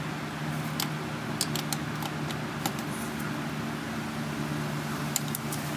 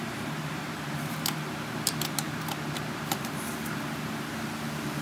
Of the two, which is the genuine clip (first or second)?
first